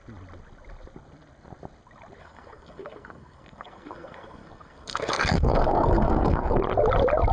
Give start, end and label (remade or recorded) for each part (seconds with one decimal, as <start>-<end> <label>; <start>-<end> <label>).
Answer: 0.0-2.2 recorded; 2.2-6.6 remade; 6.6-7.3 recorded